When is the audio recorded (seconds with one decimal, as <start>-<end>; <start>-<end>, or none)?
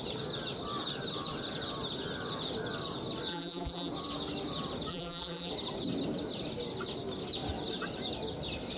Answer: 0.0-3.3; 3.9-4.9; 5.5-8.8